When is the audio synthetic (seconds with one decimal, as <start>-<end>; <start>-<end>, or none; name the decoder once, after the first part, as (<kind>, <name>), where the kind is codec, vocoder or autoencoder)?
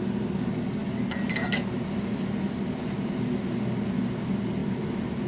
none